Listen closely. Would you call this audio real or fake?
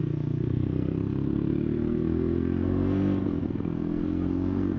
fake